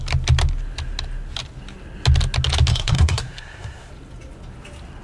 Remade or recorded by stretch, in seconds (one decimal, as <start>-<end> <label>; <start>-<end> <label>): 0.0-2.7 recorded; 2.7-3.9 remade; 3.9-5.0 recorded